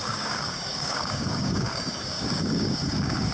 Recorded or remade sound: remade